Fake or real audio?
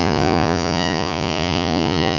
fake